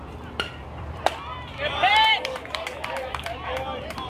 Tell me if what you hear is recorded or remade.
remade